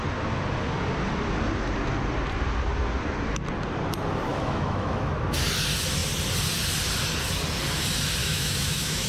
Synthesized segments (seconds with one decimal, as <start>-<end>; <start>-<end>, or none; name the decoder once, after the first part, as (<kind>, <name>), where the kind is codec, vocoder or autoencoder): 4.3-5.1 (autoencoder, DAC-VAE); 8.2-9.1